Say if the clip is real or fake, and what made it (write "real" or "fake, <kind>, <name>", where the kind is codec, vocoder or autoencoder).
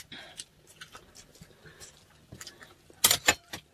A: real